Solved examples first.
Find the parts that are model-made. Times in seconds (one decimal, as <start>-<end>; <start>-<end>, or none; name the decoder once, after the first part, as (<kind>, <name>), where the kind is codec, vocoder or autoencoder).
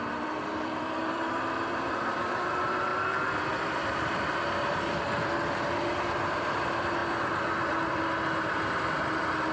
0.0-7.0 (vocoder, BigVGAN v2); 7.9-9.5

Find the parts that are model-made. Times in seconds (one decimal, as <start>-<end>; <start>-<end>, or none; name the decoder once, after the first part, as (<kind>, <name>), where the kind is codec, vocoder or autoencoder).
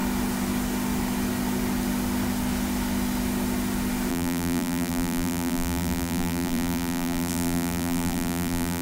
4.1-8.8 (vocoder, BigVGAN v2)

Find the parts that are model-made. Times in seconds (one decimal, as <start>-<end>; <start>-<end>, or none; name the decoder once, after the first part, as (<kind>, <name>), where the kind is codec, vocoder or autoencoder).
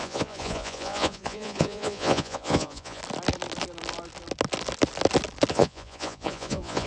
0.0-3.0 (vocoder, Vocos); 5.5-6.9